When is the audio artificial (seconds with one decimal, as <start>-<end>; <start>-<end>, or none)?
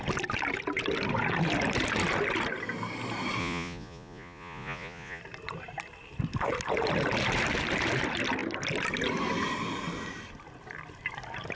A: 3.4-5.2